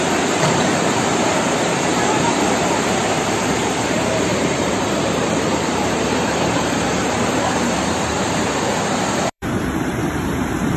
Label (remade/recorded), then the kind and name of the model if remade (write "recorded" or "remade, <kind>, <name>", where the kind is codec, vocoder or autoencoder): remade, vocoder, BigVGAN v2